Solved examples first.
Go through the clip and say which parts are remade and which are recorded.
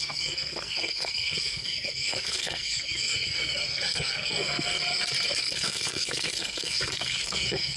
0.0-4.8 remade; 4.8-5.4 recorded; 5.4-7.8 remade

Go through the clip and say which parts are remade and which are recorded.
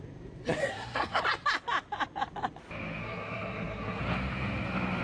0.0-0.6 recorded; 0.6-1.2 remade; 1.2-3.0 recorded; 3.0-4.0 remade; 4.0-5.0 recorded